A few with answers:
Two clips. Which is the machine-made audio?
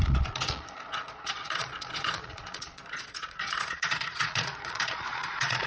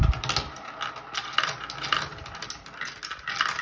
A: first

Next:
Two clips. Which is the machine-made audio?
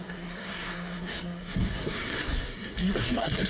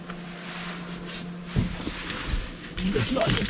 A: first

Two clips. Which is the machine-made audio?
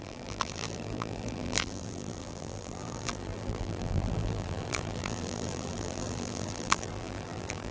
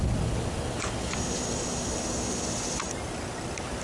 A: first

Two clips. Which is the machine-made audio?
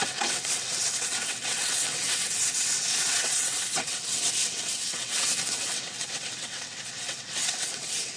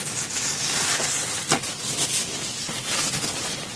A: first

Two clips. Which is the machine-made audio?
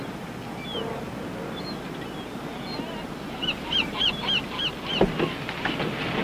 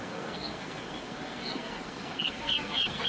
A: second